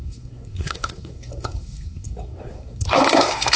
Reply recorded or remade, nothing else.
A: remade